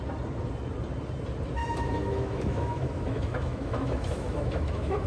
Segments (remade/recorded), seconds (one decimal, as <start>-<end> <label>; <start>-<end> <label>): 0.0-1.6 recorded; 1.6-5.1 remade